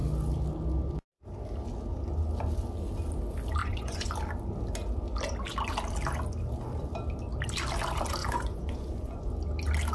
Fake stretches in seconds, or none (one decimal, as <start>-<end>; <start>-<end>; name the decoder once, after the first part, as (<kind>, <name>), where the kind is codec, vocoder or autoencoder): 3.6-4.1 (vocoder, Vocos); 8.2-9.3